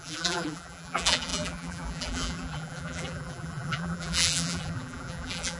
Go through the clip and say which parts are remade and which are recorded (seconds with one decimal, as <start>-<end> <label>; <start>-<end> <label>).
0.0-5.6 remade